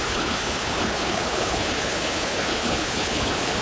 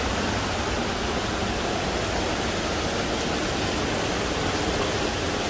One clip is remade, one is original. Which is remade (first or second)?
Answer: first